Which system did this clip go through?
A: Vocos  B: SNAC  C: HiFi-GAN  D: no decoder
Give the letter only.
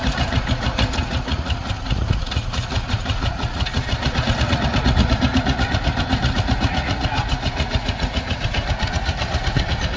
A